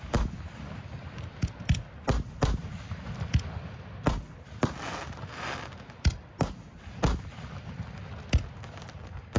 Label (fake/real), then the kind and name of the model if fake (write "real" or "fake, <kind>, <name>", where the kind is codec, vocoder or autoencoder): real